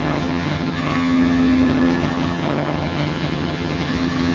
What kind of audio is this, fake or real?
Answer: fake